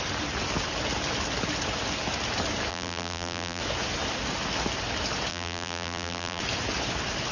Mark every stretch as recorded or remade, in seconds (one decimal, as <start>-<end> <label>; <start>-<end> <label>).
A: 0.0-2.7 recorded; 2.7-3.6 remade; 3.6-5.3 recorded; 5.3-6.4 remade; 6.4-7.3 recorded